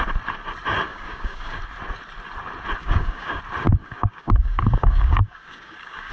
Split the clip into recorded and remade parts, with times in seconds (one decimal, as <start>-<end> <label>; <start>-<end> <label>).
0.0-0.9 recorded; 0.9-1.6 remade; 1.6-2.8 recorded; 2.8-3.4 remade; 3.4-3.8 recorded; 3.8-6.1 remade

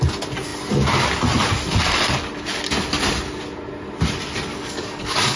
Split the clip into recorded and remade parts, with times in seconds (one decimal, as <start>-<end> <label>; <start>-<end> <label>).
0.0-4.5 recorded; 4.5-5.4 remade

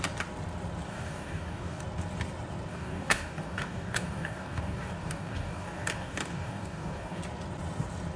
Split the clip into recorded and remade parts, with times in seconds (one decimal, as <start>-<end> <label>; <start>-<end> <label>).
0.0-0.9 recorded; 0.9-1.8 remade; 1.8-2.7 recorded; 2.7-7.2 remade; 7.2-8.2 recorded

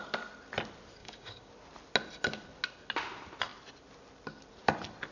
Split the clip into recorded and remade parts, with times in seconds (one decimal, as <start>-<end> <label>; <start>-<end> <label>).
0.0-1.0 recorded; 1.0-1.5 remade; 1.5-5.1 recorded

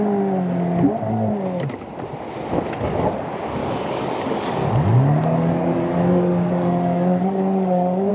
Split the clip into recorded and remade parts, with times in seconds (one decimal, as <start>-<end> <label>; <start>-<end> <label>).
0.0-3.6 recorded; 3.6-8.1 remade

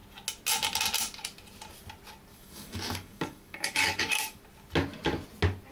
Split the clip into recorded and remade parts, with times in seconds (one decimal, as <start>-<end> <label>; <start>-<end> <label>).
0.0-2.3 recorded; 2.3-4.4 remade; 4.4-5.7 recorded

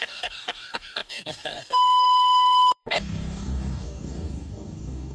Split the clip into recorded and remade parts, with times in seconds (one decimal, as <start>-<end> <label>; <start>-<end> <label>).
0.0-5.1 remade